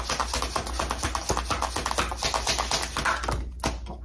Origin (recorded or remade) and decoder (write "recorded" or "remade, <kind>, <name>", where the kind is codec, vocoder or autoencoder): recorded